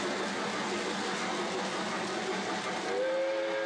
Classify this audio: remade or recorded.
recorded